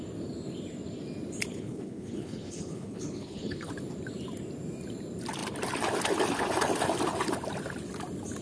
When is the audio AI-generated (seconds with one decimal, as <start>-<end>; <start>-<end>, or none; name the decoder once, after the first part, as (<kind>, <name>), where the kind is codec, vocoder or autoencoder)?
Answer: 1.5-3.7 (codec, HILCodec)

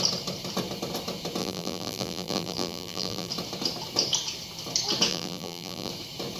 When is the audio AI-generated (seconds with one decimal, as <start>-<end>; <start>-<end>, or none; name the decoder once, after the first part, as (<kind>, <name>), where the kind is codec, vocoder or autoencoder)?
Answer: 1.4-3.3 (vocoder, BigVGAN v2); 5.1-5.9

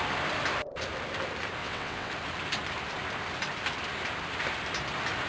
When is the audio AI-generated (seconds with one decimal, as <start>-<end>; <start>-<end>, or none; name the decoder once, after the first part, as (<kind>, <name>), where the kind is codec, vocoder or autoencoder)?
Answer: 1.6-2.1 (vocoder, WaveNeXt)

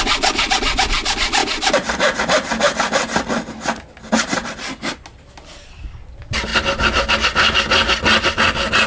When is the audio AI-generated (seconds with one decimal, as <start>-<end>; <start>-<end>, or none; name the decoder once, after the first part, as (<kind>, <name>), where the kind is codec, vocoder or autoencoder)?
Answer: none

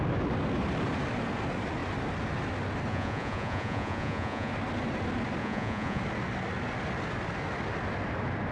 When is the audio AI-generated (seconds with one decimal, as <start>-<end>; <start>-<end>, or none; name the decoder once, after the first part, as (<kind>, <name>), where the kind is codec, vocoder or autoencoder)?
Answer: 2.9-4.5 (vocoder, Vocos); 5.4-6.0

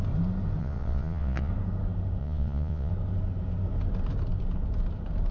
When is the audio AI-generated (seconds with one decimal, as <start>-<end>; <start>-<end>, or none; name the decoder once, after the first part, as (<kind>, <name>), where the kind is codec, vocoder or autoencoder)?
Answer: 0.6-1.5 (vocoder, Vocos); 2.2-2.9